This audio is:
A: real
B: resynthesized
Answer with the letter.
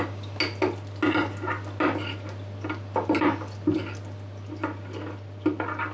A